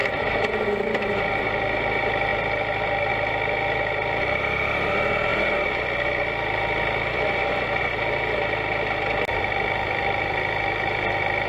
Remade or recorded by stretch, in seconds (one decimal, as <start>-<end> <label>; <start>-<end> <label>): 0.0-11.5 recorded